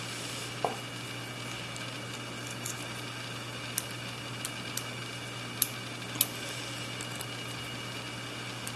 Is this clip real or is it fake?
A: real